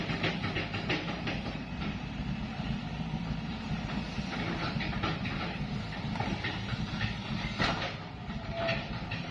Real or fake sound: fake